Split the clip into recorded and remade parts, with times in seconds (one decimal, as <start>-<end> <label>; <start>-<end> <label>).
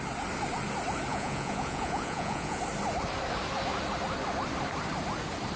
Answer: 0.0-1.1 recorded; 1.1-2.6 remade; 2.6-5.6 recorded